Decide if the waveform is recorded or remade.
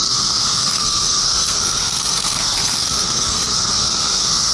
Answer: remade